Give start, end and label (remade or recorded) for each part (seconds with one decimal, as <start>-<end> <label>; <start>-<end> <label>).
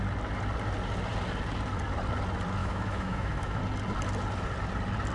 0.0-2.6 recorded; 2.6-3.6 remade; 3.6-5.1 recorded